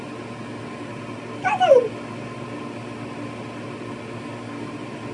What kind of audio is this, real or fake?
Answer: real